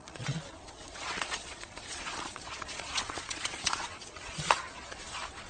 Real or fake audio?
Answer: fake